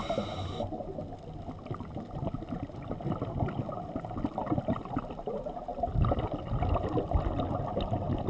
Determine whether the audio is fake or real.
real